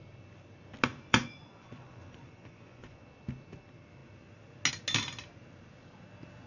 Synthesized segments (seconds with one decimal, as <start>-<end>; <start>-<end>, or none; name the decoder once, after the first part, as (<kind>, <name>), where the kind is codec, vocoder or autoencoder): 0.9-3.0 (vocoder, Vocos)